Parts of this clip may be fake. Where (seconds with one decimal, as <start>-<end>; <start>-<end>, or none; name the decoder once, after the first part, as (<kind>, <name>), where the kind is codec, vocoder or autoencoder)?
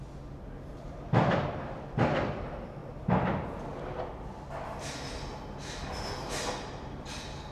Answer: 0.0-2.8 (vocoder, BigVGAN v2)